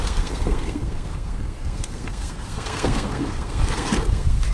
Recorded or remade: remade